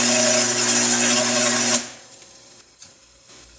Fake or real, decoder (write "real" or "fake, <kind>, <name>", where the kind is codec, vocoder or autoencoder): real